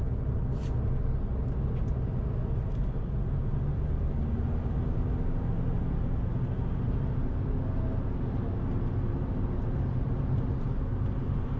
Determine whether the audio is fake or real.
real